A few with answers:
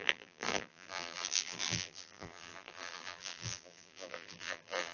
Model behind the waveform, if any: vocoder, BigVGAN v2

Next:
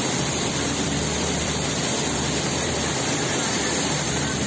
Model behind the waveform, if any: vocoder, BigVGAN v2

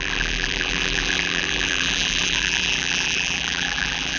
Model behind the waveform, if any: vocoder, BigVGAN v2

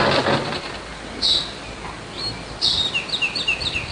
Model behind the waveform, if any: none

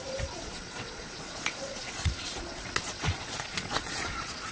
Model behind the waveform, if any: vocoder, Vocos